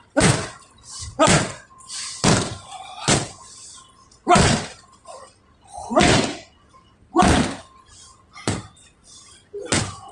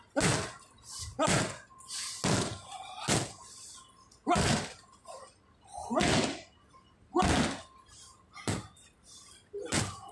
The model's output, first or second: first